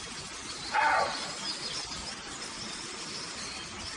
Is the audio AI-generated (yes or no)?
yes